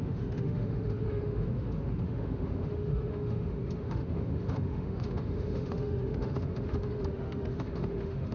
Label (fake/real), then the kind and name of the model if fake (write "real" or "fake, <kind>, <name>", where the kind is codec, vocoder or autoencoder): fake, autoencoder, DAC-VAE